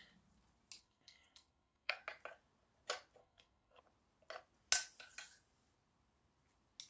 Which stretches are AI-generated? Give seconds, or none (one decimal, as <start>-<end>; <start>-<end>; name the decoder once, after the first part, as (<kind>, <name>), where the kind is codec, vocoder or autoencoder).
0.8-2.0 (codec, SNAC); 3.2-3.8